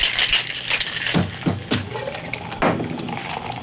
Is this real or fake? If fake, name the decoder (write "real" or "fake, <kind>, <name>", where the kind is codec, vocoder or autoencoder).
real